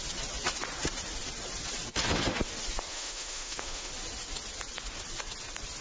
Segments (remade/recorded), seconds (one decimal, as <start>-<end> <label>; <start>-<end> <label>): 0.0-2.9 recorded; 2.9-3.9 remade; 3.9-5.8 recorded